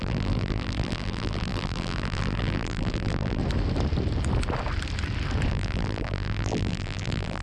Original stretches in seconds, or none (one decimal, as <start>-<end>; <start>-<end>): 3.4-5.5